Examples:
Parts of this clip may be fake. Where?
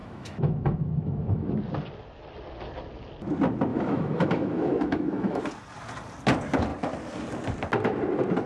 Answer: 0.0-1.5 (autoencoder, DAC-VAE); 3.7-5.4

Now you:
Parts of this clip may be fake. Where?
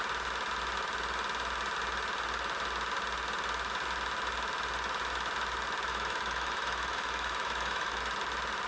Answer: 5.9-8.0 (autoencoder, DAC-VAE)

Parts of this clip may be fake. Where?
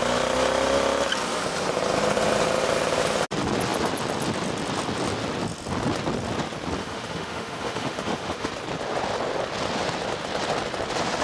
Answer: 6.8-8.5 (autoencoder, DAC-VAE)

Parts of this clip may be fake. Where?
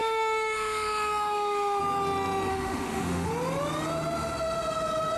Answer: 0.0-1.8 (autoencoder, DAC-VAE); 2.5-3.3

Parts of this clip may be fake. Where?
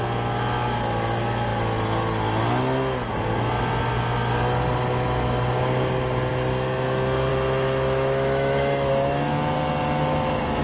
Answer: 7.3-8.9 (autoencoder, DAC-VAE)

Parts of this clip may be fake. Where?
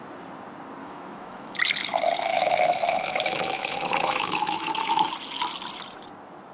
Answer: 0.8-1.6 (autoencoder, DAC-VAE); 2.3-5.1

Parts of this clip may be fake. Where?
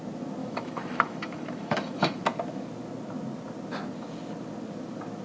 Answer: 0.4-2.2 (autoencoder, DAC-VAE)